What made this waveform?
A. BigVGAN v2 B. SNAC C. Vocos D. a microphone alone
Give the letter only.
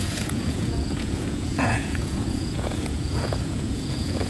C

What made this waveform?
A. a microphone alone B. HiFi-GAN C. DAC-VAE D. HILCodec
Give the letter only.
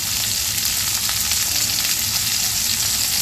A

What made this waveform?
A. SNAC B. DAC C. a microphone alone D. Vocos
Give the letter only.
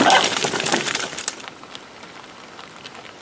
C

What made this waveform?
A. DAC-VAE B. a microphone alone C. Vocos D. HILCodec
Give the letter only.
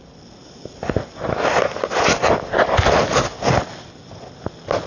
B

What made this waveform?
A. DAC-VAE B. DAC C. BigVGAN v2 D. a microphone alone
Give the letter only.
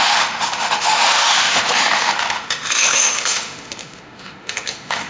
A